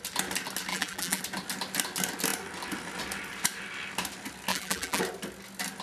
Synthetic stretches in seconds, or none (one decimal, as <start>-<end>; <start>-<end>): 0.7-1.2; 4.5-5.0